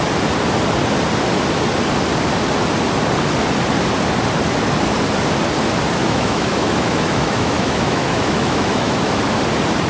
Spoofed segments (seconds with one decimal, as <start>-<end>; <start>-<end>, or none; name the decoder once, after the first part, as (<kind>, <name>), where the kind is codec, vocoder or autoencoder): 6.0-9.2 (autoencoder, DAC-VAE)